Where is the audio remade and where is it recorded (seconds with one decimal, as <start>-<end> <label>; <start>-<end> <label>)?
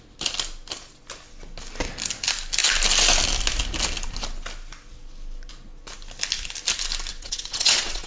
0.0-7.1 recorded; 7.1-8.1 remade